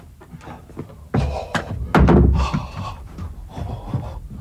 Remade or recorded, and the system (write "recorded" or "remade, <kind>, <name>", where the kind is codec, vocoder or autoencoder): recorded